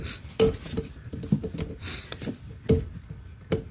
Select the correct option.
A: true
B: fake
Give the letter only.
A